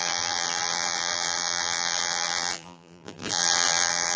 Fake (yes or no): yes